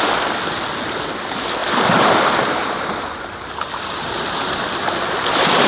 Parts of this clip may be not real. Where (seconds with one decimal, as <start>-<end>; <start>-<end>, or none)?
none